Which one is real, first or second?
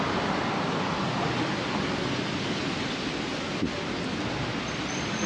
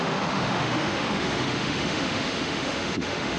first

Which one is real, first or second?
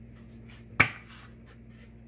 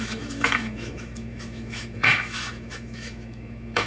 first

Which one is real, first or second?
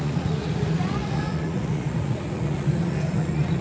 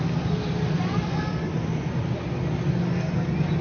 second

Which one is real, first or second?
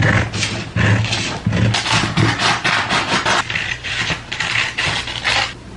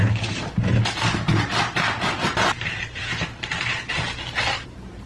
first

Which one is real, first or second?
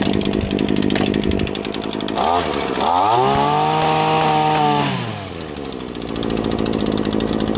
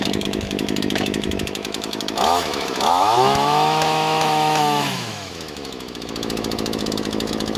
first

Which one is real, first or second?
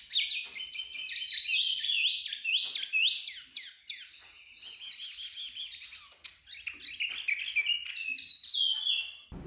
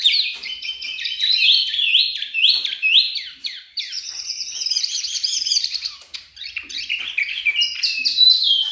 first